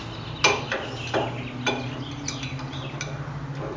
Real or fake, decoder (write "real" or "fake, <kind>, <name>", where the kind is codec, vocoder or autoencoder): real